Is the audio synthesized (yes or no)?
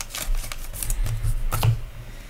no